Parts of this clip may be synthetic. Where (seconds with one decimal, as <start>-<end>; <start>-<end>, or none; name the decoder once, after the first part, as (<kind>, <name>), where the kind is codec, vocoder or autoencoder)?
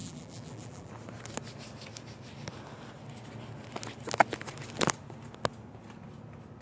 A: 0.0-0.9 (vocoder, BigVGAN v2)